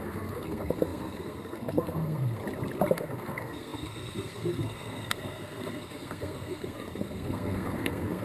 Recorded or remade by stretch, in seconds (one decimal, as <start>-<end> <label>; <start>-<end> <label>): 0.0-2.4 remade; 2.4-2.9 recorded; 2.9-8.2 remade